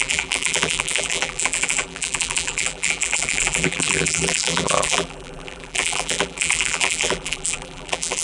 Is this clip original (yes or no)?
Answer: no